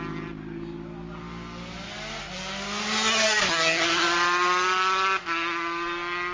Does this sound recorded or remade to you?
recorded